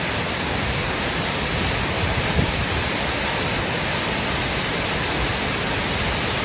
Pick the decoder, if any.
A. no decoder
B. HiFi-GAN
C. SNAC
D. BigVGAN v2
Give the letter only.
A